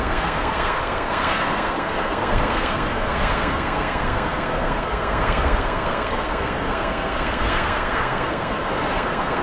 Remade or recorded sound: remade